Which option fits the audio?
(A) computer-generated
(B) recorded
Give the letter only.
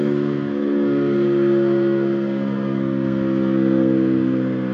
A